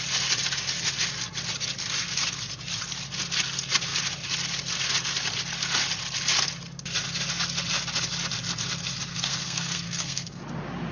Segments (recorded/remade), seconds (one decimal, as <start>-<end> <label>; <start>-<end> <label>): 0.0-9.1 recorded; 9.1-10.4 remade; 10.4-10.9 recorded